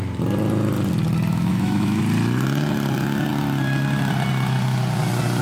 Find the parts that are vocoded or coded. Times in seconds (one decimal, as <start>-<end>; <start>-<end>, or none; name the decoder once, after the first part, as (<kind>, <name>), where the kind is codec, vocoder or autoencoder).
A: 1.3-2.0 (autoencoder, DAC-VAE)

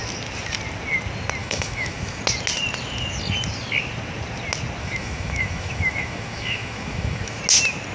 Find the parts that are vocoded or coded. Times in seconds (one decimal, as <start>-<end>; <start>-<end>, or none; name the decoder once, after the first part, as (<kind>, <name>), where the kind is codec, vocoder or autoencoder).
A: 1.4-2.2 (autoencoder, DAC-VAE); 4.8-7.4

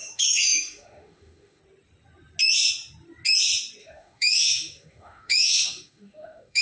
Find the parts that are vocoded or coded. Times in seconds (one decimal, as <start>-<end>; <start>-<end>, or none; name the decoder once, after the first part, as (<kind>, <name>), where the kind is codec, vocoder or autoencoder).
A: 0.0-1.6 (autoencoder, DAC-VAE); 3.8-6.6